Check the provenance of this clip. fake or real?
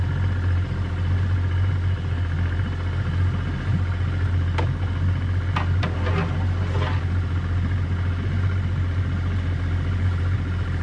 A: real